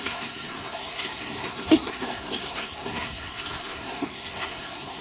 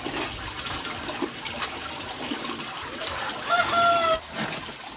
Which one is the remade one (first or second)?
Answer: first